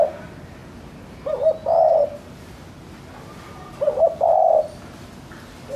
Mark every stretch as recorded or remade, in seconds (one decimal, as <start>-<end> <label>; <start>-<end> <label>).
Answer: 0.0-5.8 recorded